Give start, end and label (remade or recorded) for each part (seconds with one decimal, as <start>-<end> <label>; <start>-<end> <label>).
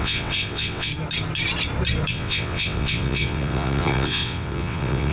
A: 0.0-0.9 remade; 0.9-2.1 recorded; 2.1-5.1 remade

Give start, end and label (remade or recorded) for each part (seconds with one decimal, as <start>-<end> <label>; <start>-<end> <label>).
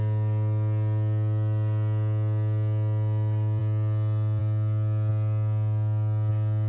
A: 0.0-6.7 recorded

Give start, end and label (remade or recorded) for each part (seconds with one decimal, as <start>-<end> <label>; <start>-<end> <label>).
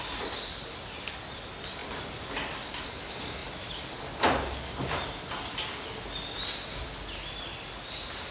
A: 0.0-1.8 recorded; 1.8-2.3 remade; 2.3-3.4 recorded; 3.4-4.0 remade; 4.0-8.3 recorded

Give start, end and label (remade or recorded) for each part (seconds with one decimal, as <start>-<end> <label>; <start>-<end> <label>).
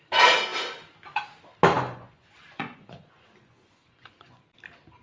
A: 0.0-1.7 recorded; 1.7-4.4 remade; 4.4-5.0 recorded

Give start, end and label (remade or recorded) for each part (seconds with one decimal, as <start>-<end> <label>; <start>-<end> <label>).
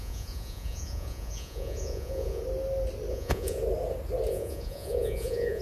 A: 0.0-2.4 remade; 2.4-3.1 recorded; 3.1-3.6 remade; 3.6-4.3 recorded; 4.3-5.6 remade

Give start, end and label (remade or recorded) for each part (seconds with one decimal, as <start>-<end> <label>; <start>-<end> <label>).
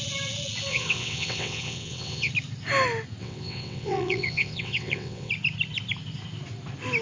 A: 0.0-0.7 recorded; 0.7-2.3 remade; 2.3-3.2 recorded; 3.2-5.3 remade; 5.3-7.0 recorded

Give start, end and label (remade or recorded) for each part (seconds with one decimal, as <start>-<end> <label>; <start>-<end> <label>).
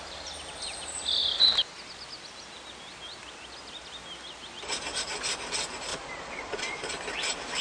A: 0.0-5.9 recorded; 5.9-6.9 remade; 6.9-7.6 recorded